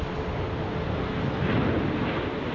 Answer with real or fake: real